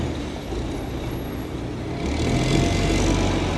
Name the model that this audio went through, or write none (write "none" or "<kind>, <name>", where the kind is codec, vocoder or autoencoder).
none